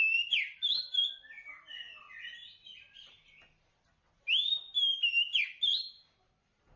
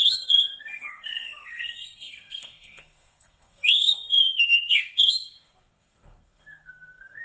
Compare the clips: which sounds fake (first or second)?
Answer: second